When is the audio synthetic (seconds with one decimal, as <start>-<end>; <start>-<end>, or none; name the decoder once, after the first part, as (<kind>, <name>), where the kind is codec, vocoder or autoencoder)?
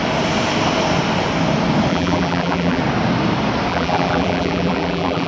1.9-2.8 (vocoder, BigVGAN v2); 3.7-5.3